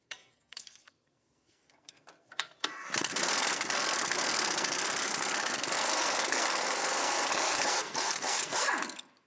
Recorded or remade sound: remade